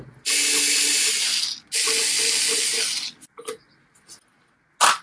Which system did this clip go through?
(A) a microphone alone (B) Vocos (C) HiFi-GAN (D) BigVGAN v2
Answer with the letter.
A